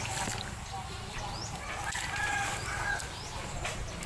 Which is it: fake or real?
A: real